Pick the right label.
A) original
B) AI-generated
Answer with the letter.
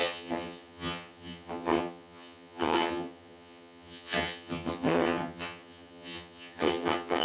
B